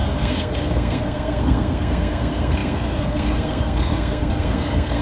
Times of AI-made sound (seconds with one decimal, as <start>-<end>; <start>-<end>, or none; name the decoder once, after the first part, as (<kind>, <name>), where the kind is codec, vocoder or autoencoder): 0.0-5.0 (codec, SNAC)